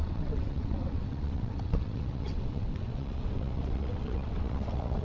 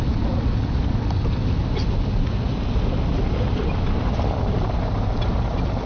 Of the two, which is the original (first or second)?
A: second